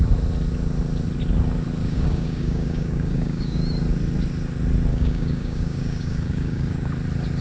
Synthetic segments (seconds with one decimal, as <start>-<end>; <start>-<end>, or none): 1.8-3.6; 4.9-6.9